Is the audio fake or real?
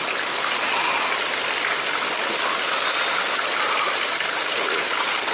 real